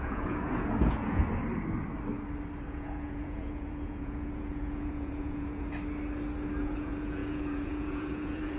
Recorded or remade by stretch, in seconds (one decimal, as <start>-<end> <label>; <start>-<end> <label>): 0.0-1.2 remade; 1.2-2.7 recorded; 2.7-5.7 remade; 5.7-6.6 recorded; 6.6-8.6 remade